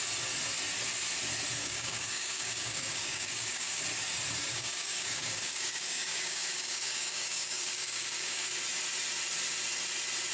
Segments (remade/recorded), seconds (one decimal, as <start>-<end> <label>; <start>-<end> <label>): 0.0-1.6 recorded; 1.6-3.8 remade; 3.8-4.5 recorded; 4.5-8.5 remade; 8.5-10.3 recorded